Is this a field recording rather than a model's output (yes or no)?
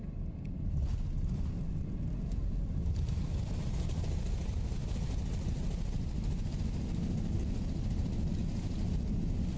yes